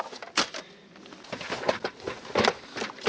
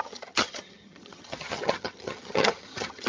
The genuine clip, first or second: first